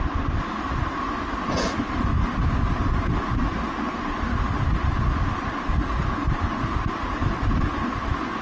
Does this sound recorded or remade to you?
recorded